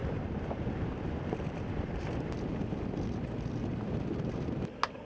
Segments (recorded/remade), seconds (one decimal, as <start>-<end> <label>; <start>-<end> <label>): 0.0-5.0 recorded